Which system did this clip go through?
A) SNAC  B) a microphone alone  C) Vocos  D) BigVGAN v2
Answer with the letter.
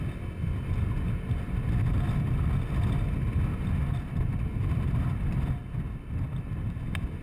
B